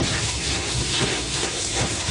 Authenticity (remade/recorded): remade